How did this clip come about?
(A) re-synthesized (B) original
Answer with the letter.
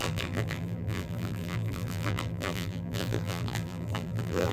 A